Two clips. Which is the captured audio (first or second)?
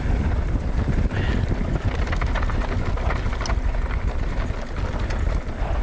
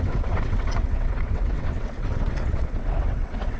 first